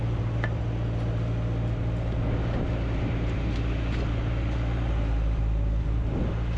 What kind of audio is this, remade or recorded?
recorded